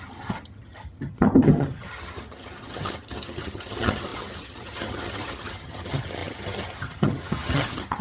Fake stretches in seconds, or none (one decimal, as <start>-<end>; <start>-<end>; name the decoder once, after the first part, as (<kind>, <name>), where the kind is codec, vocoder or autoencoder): 0.0-8.0 (vocoder, HiFi-GAN)